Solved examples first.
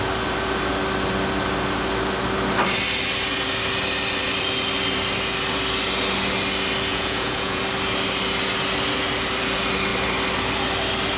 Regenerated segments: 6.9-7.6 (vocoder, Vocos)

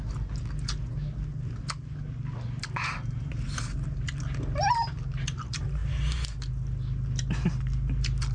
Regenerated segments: none

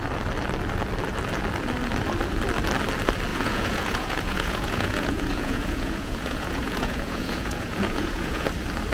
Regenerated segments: 3.3-8.5 (vocoder, Vocos)

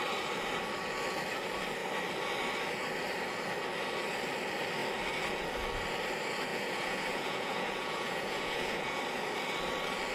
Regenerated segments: 6.5-9.0 (vocoder, Vocos)

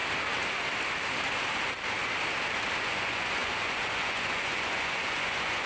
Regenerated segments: 2.8-5.7 (vocoder, Vocos)

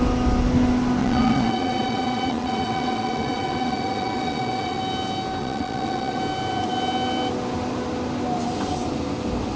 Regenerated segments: 1.0-4.8 (vocoder, Vocos); 5.4-6.2

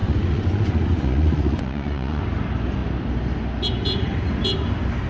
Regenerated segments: 0.0-2.2 (vocoder, Vocos)